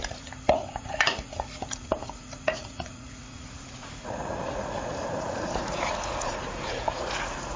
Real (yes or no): no